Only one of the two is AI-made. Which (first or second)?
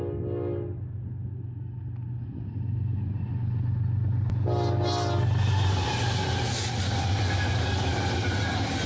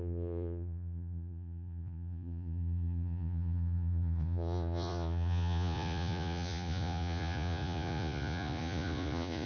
second